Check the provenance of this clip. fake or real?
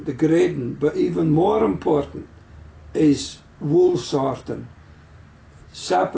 real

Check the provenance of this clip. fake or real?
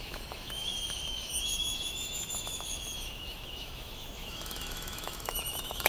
fake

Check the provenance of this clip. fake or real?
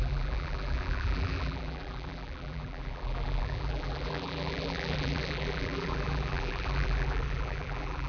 fake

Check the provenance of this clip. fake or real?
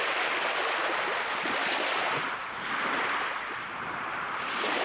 fake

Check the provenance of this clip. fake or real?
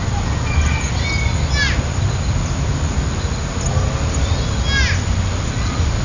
real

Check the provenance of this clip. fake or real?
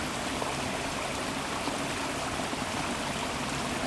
real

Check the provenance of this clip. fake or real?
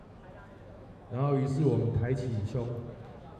fake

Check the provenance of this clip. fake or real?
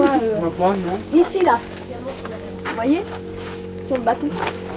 fake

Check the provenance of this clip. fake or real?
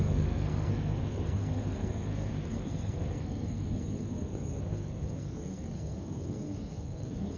fake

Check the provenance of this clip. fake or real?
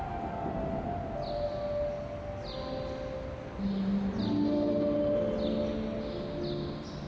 real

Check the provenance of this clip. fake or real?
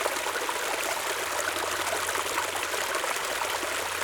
real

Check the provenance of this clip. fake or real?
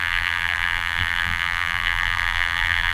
fake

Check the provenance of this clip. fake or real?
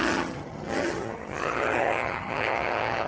fake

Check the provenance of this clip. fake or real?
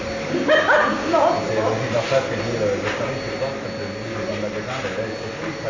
real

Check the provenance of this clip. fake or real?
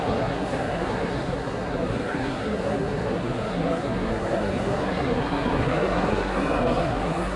fake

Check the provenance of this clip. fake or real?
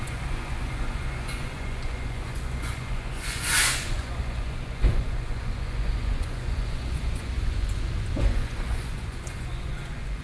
fake